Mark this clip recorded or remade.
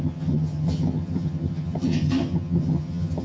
remade